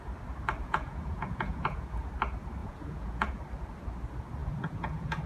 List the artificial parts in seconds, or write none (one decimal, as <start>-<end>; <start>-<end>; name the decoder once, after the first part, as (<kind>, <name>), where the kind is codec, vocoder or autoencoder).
0.6-2.1 (vocoder, Vocos); 2.6-3.4; 4.4-5.3